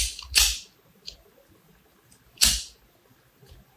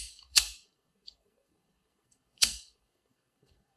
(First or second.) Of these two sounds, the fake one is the second